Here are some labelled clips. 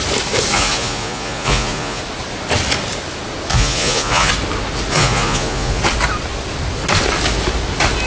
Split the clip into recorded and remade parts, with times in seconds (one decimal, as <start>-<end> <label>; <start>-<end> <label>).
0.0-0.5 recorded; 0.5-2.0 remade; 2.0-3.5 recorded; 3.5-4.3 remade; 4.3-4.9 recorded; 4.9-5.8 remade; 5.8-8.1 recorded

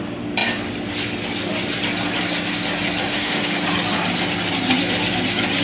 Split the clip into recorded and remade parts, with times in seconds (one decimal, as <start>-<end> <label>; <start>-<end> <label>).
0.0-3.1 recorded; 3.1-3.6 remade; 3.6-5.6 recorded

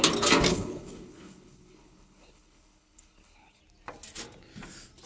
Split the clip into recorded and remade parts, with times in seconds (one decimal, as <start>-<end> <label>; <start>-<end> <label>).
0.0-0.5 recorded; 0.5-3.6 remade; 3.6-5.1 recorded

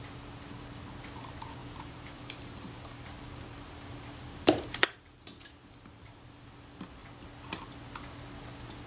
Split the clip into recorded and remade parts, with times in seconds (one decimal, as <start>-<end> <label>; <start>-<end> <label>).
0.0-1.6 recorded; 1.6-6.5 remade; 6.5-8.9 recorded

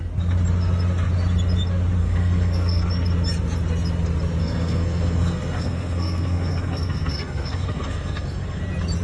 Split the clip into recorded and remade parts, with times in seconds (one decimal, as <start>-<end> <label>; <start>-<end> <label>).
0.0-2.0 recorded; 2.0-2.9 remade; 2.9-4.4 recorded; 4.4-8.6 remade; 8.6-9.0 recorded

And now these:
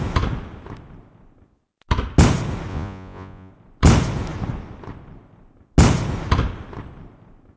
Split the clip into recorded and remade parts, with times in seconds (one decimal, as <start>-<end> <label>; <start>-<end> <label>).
0.0-2.7 recorded; 2.7-3.5 remade; 3.5-7.6 recorded

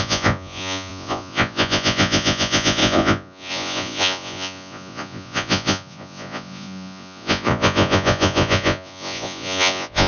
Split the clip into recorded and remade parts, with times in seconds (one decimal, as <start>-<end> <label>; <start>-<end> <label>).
0.0-10.1 remade

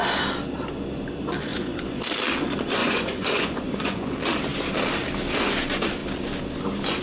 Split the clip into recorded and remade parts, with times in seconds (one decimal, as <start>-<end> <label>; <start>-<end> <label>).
0.0-1.5 recorded; 1.5-2.0 remade; 2.0-2.8 recorded; 2.8-4.1 remade; 4.1-7.0 recorded